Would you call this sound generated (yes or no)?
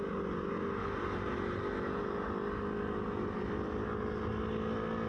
no